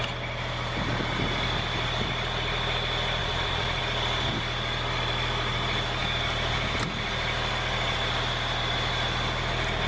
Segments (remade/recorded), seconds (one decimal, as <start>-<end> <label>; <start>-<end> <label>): 0.0-3.2 recorded; 3.2-3.8 remade; 3.8-9.9 recorded